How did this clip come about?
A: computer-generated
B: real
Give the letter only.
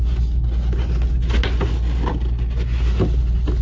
B